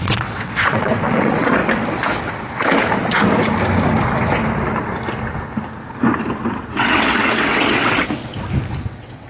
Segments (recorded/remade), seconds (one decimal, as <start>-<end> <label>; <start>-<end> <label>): 0.0-1.6 remade; 1.6-6.4 recorded; 6.4-8.2 remade; 8.2-8.9 recorded; 8.9-9.3 remade